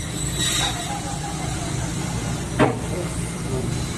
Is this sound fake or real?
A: fake